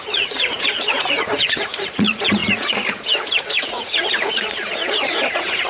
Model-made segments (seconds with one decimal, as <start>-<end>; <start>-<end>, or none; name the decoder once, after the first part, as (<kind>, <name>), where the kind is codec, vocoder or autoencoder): 0.0-5.7 (vocoder, Vocos)